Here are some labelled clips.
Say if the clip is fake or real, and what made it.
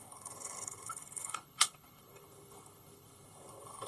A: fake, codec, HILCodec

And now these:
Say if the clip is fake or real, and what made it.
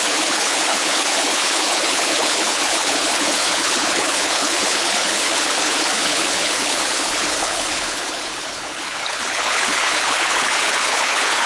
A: fake, codec, HILCodec